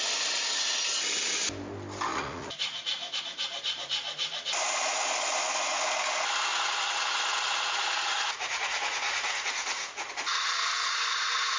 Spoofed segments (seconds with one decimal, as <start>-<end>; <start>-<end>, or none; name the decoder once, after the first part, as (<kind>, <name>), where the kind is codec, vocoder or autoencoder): 2.1-3.2 (vocoder, Vocos); 6.5-11.6